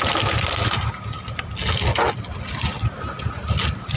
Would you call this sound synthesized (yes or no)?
no